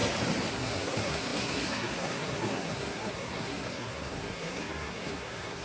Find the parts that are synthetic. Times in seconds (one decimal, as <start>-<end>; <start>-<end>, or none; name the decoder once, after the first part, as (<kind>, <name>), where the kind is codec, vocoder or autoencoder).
0.5-5.6 (codec, SNAC)